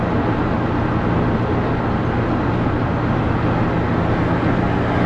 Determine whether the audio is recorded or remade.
recorded